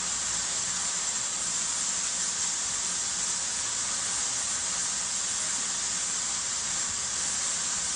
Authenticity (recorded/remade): recorded